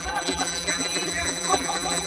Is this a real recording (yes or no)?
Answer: no